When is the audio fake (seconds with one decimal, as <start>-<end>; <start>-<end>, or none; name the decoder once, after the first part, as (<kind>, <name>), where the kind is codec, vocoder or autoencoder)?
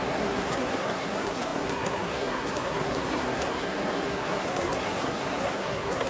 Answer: 0.0-6.1 (codec, SNAC)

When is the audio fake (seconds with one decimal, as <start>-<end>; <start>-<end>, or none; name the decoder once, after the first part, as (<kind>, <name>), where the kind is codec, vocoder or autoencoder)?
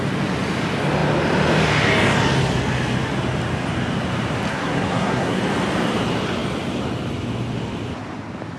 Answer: 4.5-5.4 (codec, SNAC)